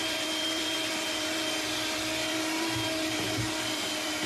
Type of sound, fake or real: fake